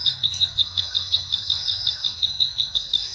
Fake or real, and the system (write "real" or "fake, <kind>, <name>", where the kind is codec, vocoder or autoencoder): fake, codec, SNAC